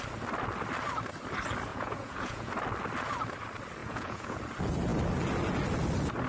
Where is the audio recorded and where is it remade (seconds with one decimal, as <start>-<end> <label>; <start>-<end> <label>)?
0.0-1.7 recorded; 1.7-2.5 remade; 2.5-3.8 recorded; 3.8-4.4 remade; 4.4-6.3 recorded

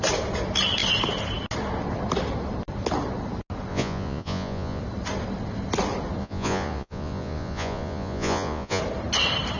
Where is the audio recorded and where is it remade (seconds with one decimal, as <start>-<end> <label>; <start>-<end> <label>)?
0.0-3.7 recorded; 3.7-4.8 remade; 4.8-6.2 recorded; 6.2-8.8 remade; 8.8-9.6 recorded

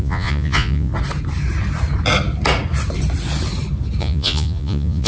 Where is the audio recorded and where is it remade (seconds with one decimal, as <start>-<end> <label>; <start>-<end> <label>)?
0.0-0.9 remade; 0.9-4.0 recorded; 4.0-5.1 remade

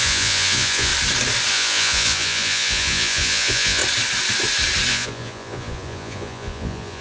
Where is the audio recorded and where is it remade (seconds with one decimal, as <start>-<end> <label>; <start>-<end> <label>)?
0.0-0.9 remade; 0.9-1.5 recorded; 1.5-3.8 remade; 3.8-4.9 recorded; 4.9-7.0 remade